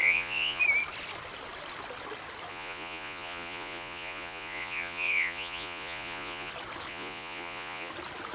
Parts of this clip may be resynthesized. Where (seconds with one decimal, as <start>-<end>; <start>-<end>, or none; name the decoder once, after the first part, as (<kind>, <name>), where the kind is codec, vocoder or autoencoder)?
0.0-0.6 (vocoder, Vocos); 2.5-6.5; 6.9-7.9